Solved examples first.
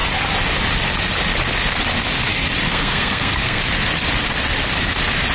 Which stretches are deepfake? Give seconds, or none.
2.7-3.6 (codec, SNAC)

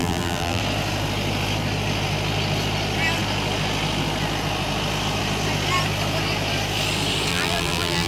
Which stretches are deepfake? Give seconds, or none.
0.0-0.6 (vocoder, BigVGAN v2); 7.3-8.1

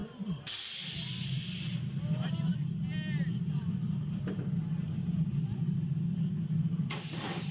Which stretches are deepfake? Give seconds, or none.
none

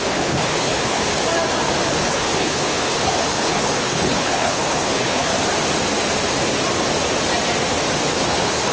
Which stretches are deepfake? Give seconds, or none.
0.0-1.0 (codec, HILCodec); 1.9-5.3; 8.2-8.7